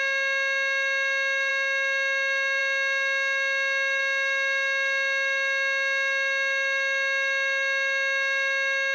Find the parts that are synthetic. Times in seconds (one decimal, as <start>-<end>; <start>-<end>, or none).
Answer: 1.5-2.6